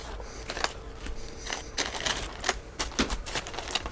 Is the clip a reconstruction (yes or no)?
no